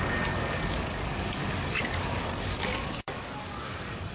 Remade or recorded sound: remade